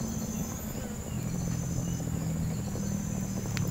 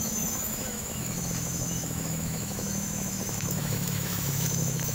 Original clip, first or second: first